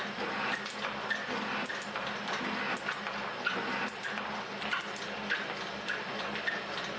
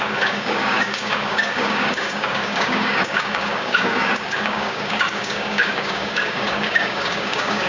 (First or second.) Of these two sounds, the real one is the first